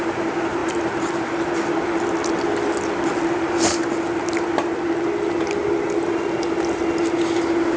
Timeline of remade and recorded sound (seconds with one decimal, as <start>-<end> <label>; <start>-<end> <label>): 0.0-7.8 recorded